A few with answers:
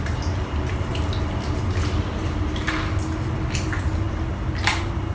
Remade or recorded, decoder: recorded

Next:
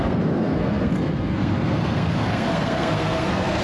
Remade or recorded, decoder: remade, codec, SNAC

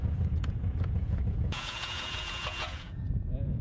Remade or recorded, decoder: remade, vocoder, Vocos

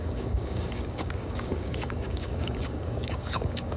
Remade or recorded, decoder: remade, codec, DAC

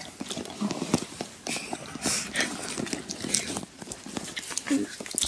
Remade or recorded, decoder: recorded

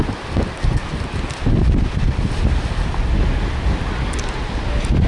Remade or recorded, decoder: recorded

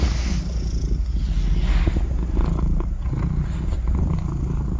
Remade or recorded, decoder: recorded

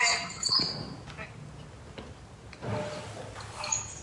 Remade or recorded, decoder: recorded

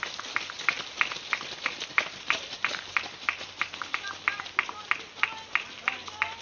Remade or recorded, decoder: recorded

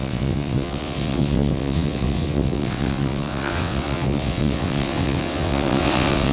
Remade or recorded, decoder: remade, vocoder, WaveNeXt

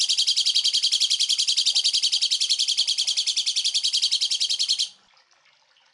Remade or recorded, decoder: recorded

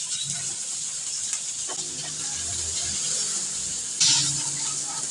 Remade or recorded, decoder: recorded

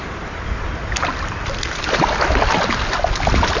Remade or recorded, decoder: recorded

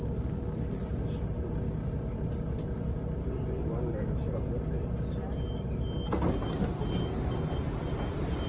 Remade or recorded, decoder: recorded